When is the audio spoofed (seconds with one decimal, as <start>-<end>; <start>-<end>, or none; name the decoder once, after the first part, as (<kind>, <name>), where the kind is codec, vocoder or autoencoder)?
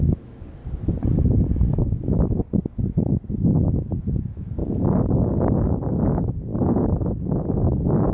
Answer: 0.0-0.6 (autoencoder, DAC-VAE); 3.8-4.6; 5.9-6.5